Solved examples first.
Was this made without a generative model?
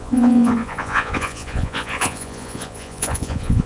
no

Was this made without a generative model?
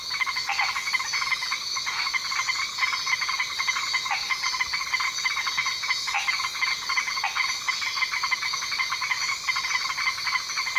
yes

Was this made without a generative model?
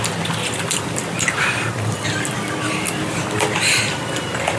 yes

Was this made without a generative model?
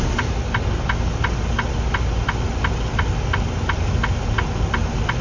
yes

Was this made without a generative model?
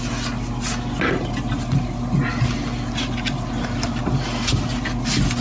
yes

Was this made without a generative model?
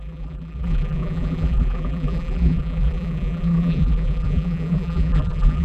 no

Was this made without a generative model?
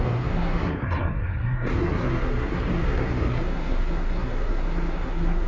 no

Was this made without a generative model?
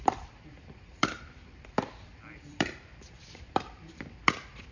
no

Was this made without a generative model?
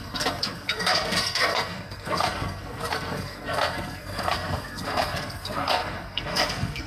no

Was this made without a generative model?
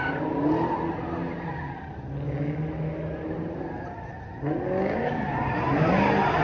yes